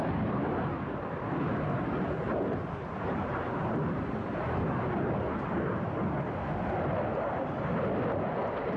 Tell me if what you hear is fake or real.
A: real